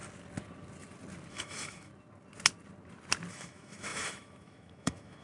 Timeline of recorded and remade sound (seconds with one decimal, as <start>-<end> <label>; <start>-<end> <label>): 0.0-1.3 recorded; 1.3-1.9 remade; 1.9-3.3 recorded; 3.3-5.2 remade